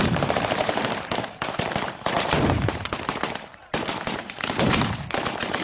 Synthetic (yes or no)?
yes